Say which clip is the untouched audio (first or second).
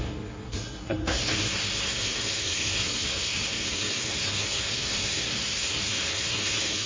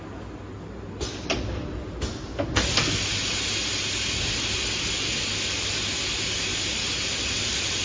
second